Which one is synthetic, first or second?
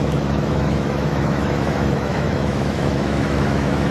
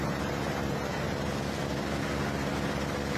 first